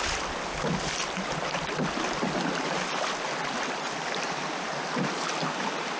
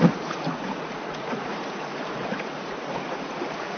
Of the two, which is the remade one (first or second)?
second